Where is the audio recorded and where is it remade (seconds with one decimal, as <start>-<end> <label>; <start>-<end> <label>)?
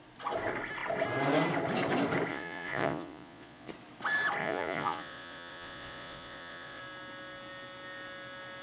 0.0-2.3 recorded; 2.3-3.7 remade; 3.7-4.4 recorded; 4.4-6.8 remade; 6.8-8.6 recorded